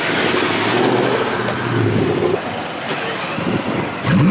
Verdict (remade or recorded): recorded